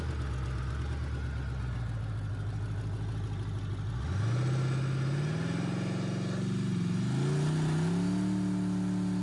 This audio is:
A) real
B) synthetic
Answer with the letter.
A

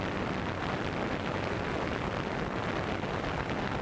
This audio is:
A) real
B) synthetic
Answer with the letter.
A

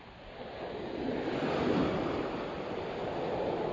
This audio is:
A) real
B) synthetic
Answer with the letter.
A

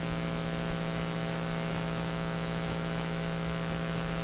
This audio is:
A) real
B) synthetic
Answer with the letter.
B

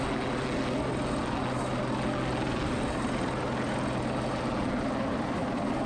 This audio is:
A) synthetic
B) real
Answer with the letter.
B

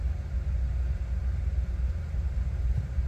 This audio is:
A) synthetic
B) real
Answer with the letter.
B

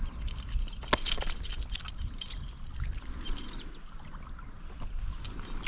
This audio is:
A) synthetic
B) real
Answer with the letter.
B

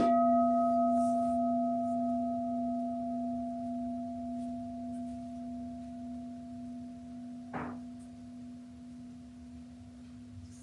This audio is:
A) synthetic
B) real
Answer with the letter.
B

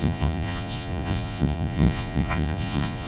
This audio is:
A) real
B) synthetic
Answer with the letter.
B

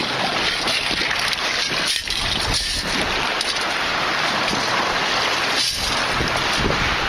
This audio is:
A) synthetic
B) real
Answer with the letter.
B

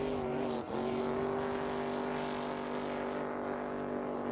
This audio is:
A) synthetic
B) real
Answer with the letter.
B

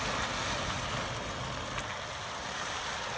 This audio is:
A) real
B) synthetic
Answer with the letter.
A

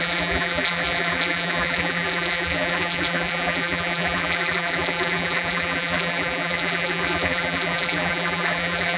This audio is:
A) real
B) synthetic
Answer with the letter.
B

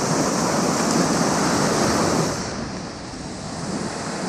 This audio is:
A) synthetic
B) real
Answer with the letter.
B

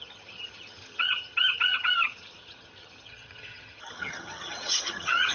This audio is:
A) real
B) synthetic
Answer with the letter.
B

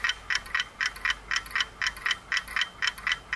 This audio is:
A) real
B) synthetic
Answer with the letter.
A